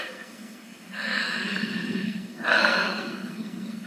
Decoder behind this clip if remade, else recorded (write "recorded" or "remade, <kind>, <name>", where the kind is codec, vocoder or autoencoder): remade, codec, SNAC